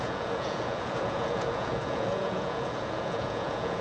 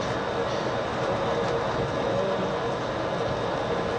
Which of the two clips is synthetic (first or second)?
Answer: first